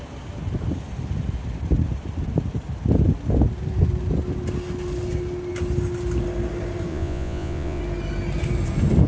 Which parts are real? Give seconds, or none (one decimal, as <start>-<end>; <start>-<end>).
0.0-6.9; 7.8-9.1